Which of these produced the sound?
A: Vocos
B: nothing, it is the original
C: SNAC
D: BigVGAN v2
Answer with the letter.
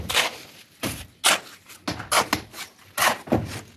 B